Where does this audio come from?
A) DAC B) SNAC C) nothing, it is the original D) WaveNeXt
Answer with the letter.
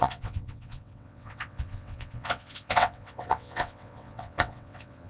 D